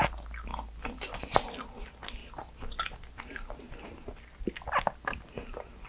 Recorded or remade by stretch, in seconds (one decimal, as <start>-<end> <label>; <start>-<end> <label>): 0.0-0.5 recorded; 0.5-1.3 remade; 1.3-5.9 recorded